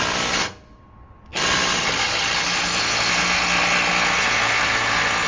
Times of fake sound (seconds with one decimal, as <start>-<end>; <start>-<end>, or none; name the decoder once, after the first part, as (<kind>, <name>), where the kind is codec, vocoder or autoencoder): none